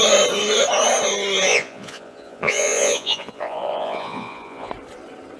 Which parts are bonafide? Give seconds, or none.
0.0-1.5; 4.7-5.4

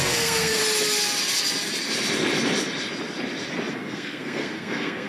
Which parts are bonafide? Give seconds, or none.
0.6-3.7

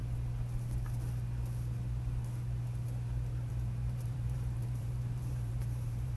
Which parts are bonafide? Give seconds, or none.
0.0-3.5

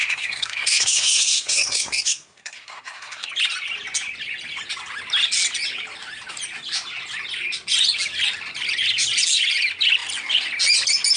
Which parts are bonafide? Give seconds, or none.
3.3-11.2

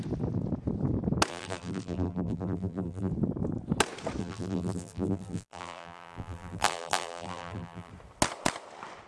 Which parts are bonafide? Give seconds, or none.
0.0-1.3; 3.1-4.2; 7.9-9.1

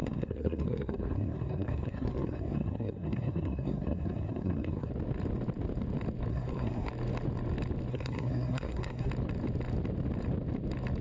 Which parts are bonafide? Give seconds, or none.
4.9-6.3; 6.9-7.9; 9.1-11.0

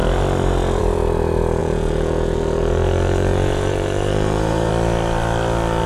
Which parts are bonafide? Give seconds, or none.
0.0-1.6; 4.7-5.9

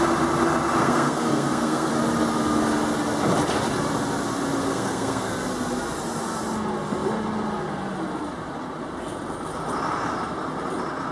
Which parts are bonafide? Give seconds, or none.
0.0-0.8; 1.9-4.6; 5.3-11.1